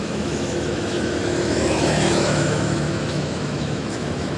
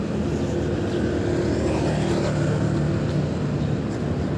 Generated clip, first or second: first